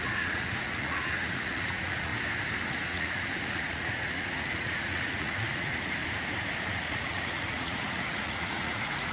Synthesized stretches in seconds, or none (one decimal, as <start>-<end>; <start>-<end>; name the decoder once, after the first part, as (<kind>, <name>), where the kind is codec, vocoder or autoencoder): 0.0-2.1 (vocoder, Vocos); 2.7-6.0; 6.7-9.1